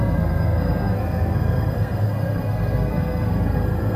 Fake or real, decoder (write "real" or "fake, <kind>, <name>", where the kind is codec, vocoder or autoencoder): fake, codec, SNAC